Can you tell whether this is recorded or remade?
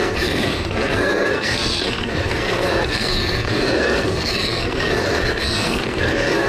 remade